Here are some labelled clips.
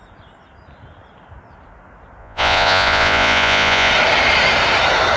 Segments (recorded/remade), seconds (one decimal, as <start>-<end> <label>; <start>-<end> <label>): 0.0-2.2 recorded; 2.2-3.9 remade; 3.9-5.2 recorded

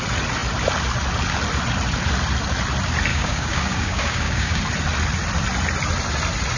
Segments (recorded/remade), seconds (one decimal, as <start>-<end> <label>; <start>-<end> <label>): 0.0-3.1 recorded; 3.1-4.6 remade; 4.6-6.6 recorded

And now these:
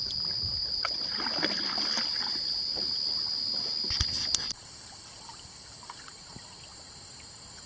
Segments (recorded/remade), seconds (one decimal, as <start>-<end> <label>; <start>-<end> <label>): 0.0-0.6 recorded; 0.6-1.1 remade; 1.1-7.7 recorded

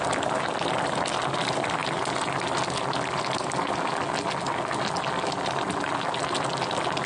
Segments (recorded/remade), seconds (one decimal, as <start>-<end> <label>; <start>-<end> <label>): 0.0-7.1 recorded